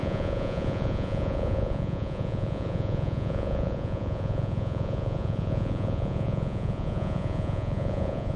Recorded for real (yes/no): no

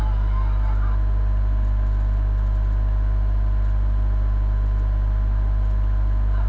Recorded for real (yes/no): yes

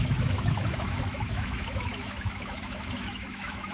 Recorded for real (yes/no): no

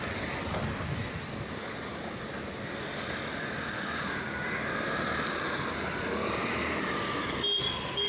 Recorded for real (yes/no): yes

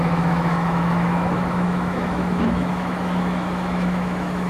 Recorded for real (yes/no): no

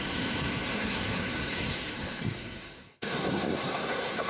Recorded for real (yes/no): no